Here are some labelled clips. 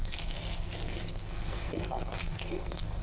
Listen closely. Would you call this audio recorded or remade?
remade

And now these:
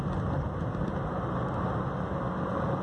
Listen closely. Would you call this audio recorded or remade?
recorded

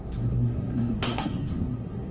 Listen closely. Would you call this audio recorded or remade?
remade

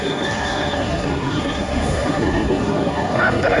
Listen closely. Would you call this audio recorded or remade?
remade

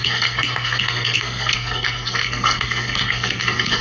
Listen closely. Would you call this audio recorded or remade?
remade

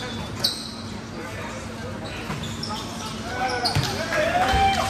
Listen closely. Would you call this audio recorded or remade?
recorded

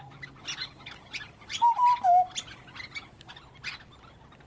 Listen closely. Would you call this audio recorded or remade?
recorded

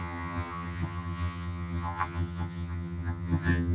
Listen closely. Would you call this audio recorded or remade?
remade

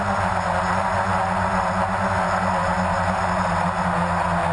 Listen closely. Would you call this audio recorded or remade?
recorded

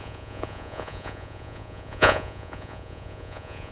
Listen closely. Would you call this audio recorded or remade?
remade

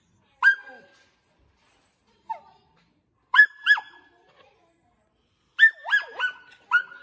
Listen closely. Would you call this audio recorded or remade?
recorded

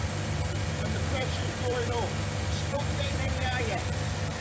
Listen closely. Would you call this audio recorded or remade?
remade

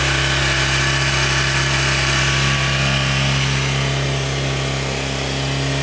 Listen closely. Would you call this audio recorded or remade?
recorded